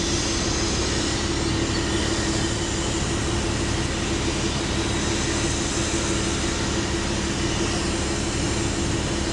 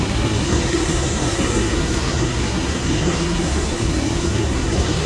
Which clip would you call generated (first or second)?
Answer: second